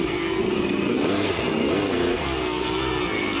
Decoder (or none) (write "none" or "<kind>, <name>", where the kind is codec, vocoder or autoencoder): codec, SNAC